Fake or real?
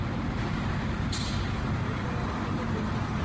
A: real